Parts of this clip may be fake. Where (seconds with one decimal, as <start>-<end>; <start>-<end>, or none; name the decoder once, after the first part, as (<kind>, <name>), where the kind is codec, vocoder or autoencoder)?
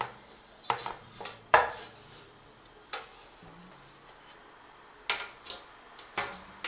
0.8-2.6 (vocoder, BigVGAN v2)